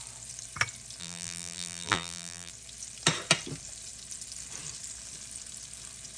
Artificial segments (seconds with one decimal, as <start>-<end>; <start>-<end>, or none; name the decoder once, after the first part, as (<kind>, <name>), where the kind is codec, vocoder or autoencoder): 1.0-2.5 (vocoder, BigVGAN v2)